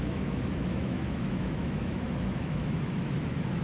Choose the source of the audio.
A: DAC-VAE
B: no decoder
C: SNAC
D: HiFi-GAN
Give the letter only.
A